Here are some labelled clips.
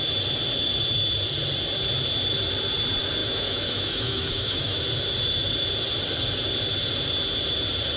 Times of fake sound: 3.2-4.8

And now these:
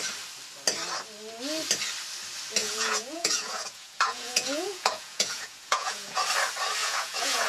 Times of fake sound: 2.6-6.2; 6.8-7.5

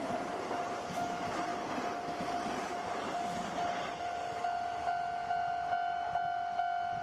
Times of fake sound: none

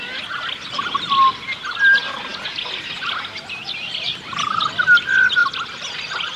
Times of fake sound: none

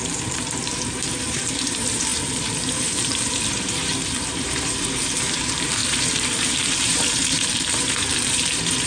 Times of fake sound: 0.0-8.9

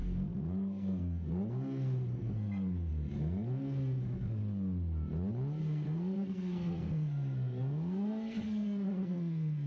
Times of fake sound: 0.0-4.4; 5.6-9.7